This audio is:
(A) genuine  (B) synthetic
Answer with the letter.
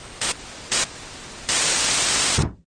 A